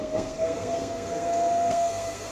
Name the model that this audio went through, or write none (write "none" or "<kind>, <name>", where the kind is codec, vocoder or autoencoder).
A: codec, SNAC